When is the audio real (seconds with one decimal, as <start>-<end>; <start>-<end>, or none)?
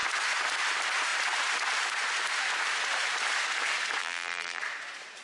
0.0-4.0; 4.6-5.2